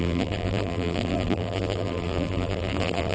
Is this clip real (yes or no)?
no